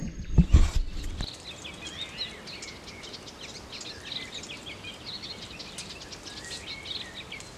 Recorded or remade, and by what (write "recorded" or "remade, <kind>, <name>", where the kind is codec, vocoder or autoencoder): recorded